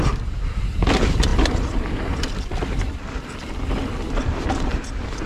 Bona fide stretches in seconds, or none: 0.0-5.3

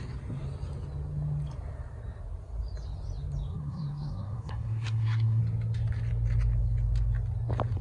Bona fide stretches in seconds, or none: 0.0-3.5; 5.4-7.8

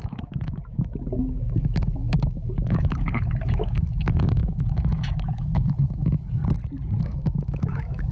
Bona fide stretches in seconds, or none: 6.4-7.0

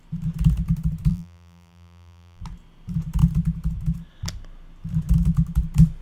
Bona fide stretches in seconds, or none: 0.0-1.1; 2.4-6.0

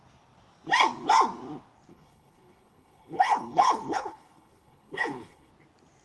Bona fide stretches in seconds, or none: 0.0-1.9; 5.5-6.0